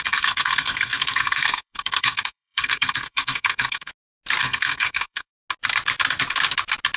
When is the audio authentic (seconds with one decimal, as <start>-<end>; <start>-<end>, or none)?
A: 3.9-4.4; 5.3-7.0